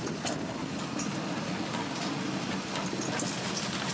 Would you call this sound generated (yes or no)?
no